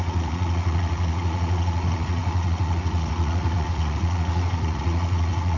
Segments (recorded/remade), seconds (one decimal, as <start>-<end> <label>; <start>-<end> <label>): 0.0-5.6 remade